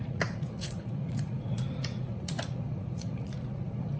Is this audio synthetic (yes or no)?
yes